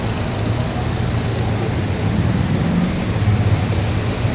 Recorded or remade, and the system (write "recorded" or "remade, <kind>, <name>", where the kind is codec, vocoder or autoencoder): recorded